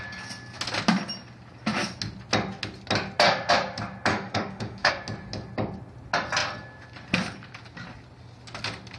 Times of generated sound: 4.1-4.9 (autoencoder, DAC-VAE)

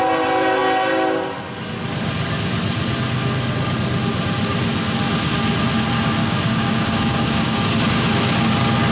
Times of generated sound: 6.2-7.8 (codec, DAC)